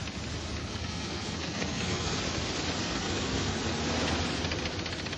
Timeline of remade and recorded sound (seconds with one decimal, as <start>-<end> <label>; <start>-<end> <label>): 0.0-0.6 recorded; 0.6-2.2 remade; 2.2-2.8 recorded; 2.8-3.5 remade; 3.5-5.2 recorded